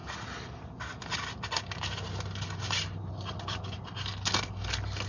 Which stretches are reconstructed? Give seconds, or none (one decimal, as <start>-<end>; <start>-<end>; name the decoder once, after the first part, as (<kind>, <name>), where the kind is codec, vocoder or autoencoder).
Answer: none